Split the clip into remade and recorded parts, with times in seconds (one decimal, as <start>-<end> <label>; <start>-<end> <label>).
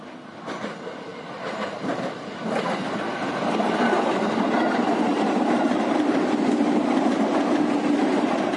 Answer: 0.0-8.6 recorded